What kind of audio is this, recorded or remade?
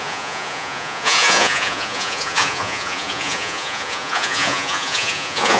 remade